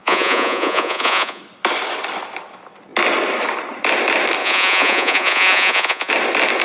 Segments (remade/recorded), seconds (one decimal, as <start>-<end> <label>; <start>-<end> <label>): 0.0-1.4 remade; 1.4-4.4 recorded; 4.4-6.1 remade; 6.1-6.6 recorded